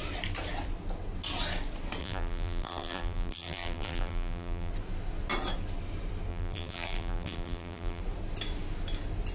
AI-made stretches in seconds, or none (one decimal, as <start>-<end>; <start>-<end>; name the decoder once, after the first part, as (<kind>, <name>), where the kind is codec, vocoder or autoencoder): 2.0-4.7 (vocoder, BigVGAN v2); 6.3-8.0